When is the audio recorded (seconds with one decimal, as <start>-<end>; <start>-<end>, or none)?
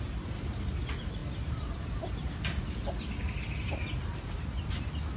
0.0-5.2